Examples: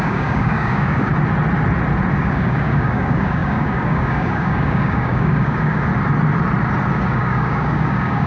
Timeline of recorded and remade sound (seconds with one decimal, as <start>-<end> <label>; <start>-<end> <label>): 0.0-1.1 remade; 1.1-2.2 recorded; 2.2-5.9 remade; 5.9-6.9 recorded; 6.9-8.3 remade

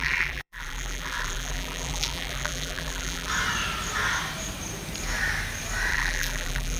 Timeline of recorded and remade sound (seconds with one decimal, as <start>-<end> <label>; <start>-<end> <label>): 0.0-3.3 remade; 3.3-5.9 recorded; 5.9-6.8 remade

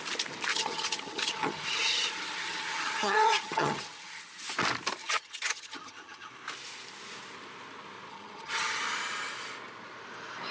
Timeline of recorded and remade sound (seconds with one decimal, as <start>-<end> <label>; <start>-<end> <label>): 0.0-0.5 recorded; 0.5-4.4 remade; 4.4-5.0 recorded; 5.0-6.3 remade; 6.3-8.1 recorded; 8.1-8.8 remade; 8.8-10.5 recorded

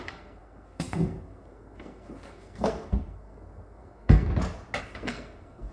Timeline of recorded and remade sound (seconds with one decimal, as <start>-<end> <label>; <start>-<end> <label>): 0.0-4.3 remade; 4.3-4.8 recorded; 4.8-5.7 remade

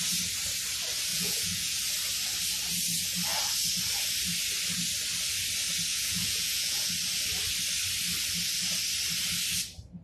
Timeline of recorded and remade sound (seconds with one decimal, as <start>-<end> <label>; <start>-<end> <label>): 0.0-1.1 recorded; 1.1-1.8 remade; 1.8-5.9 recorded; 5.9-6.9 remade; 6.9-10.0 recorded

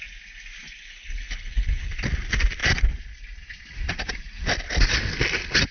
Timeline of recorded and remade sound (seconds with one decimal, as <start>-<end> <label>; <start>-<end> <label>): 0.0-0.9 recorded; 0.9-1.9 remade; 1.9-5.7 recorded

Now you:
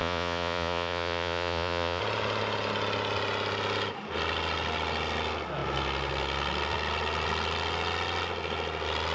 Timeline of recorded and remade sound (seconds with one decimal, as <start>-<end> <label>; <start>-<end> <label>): 0.0-2.0 remade; 2.0-9.1 recorded

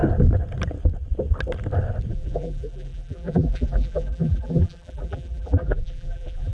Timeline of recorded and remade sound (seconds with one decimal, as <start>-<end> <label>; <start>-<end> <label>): 0.0-2.1 recorded; 2.1-6.5 remade